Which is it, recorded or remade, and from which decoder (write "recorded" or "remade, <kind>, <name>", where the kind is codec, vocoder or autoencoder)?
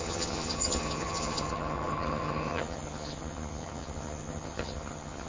remade, vocoder, HiFi-GAN